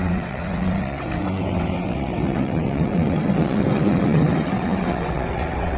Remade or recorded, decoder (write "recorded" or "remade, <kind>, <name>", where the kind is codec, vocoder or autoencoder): remade, vocoder, WaveNeXt